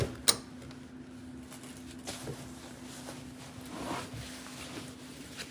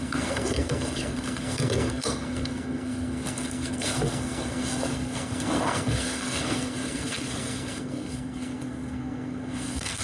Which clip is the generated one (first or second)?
second